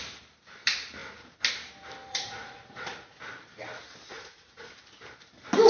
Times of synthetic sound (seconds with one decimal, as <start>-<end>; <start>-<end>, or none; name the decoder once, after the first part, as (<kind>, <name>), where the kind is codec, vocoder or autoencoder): 2.1-3.2 (vocoder, Vocos); 4.1-4.6